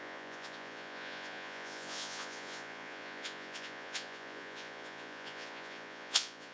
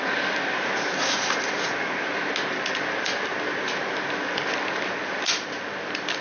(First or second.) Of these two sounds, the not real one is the first